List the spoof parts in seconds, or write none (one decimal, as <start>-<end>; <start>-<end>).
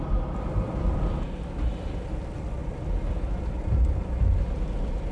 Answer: none